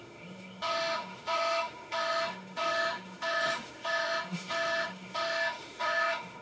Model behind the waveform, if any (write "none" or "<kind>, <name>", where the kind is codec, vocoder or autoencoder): autoencoder, DAC-VAE